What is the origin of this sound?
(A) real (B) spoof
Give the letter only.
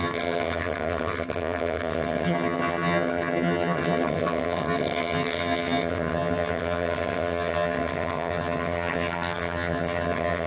B